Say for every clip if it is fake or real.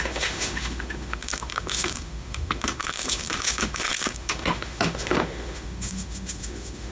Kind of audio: fake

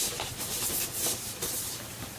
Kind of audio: real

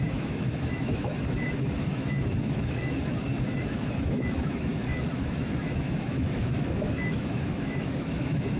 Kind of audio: fake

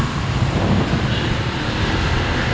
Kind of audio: real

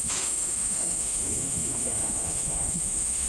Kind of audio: fake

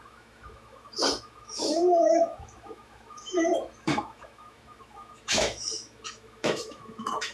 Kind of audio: fake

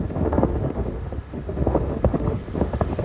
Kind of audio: fake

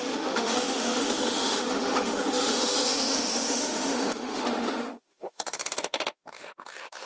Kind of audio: fake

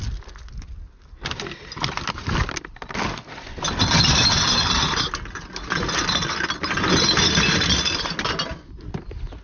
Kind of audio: real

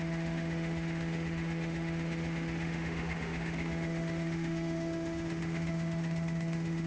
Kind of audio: fake